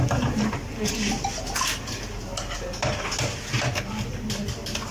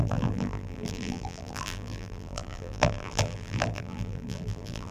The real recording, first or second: first